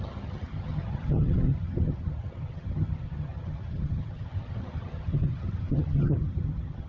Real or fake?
fake